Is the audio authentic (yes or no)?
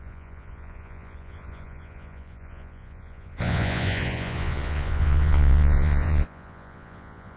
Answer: no